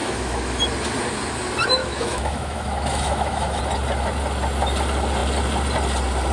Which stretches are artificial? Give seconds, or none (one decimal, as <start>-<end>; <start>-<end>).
0.0-0.6; 1.8-3.6